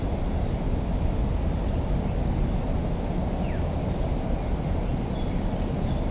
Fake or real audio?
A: real